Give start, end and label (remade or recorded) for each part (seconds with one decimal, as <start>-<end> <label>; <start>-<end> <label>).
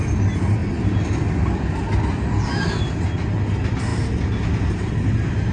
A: 0.0-5.5 recorded